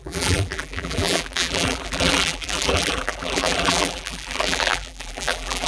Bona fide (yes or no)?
no